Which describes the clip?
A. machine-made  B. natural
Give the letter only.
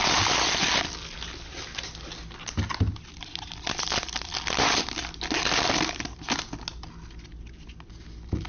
B